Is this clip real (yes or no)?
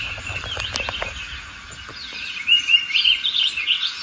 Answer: yes